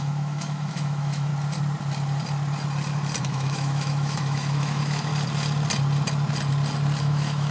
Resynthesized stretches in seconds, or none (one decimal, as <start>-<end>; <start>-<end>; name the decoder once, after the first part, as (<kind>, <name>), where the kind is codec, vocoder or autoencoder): 0.0-1.3 (autoencoder, DAC-VAE); 3.2-5.1; 7.0-7.5